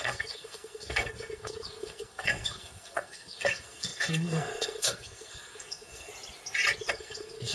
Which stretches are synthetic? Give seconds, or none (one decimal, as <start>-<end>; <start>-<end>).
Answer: 0.0-6.1; 6.9-7.5